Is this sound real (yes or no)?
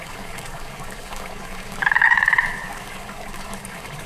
no